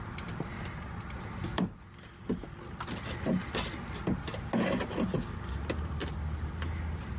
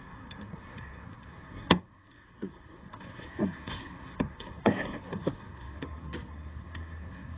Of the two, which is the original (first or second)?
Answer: first